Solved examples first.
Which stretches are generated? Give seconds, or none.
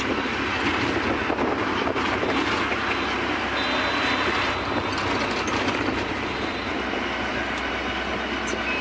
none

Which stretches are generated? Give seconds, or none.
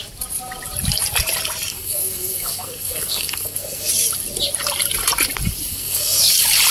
1.7-3.9 (codec, SNAC); 5.7-6.2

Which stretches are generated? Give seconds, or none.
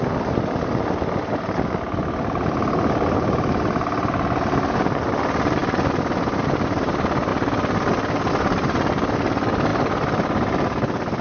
none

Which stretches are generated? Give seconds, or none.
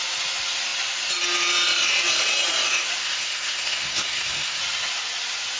3.0-4.6 (codec, SNAC)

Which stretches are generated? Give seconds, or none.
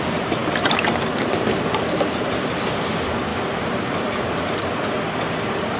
none